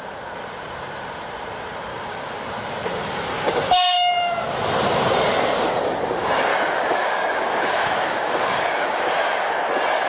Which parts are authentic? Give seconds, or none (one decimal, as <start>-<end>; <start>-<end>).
0.0-1.9; 2.4-3.3; 4.1-6.5; 9.6-10.1